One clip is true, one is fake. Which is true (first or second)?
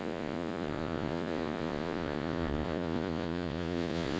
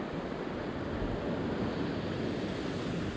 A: second